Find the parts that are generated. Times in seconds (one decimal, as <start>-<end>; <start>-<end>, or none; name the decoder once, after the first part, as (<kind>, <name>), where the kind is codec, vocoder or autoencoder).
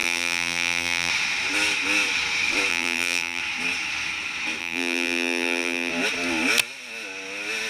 0.0-1.1 (vocoder, BigVGAN v2); 2.7-3.4; 4.6-5.9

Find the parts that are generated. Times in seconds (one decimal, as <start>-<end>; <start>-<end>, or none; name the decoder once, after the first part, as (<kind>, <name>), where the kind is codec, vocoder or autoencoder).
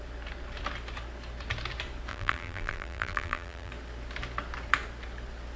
2.1-3.7 (vocoder, BigVGAN v2)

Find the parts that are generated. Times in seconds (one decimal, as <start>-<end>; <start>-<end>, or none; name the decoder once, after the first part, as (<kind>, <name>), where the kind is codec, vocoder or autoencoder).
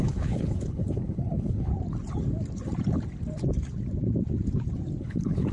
0.0-1.7 (codec, HILCodec); 5.0-5.5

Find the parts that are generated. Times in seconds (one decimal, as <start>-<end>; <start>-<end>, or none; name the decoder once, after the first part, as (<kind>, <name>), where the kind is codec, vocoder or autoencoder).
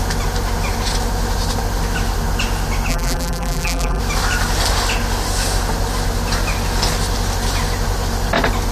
2.9-4.0 (vocoder, BigVGAN v2)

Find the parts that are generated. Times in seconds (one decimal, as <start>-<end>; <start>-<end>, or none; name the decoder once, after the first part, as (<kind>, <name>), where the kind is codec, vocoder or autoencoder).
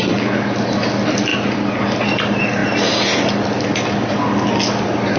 none